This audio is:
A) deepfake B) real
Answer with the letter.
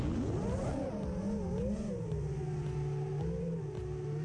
B